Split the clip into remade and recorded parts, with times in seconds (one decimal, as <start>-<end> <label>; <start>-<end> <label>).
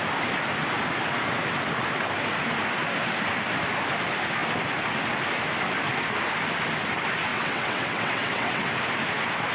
0.0-7.3 recorded; 7.3-8.7 remade; 8.7-9.5 recorded